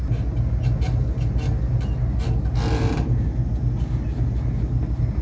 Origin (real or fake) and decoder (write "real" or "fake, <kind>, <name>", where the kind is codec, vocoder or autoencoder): real